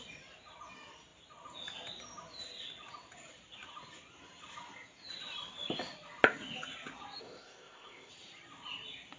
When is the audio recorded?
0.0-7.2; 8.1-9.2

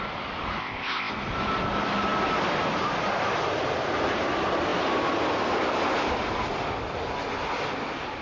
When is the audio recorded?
0.0-0.6; 1.1-8.2

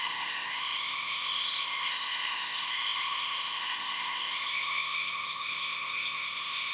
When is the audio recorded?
none

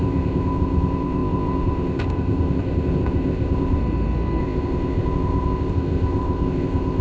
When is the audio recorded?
3.8-4.4